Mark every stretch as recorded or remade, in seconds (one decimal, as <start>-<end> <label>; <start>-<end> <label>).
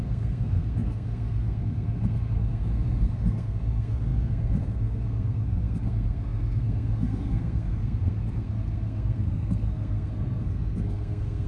0.0-11.5 remade